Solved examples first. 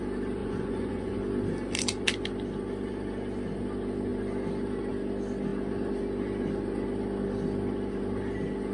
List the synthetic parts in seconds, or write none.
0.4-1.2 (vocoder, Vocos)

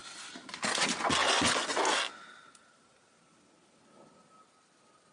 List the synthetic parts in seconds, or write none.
1.2-1.8 (vocoder, Vocos)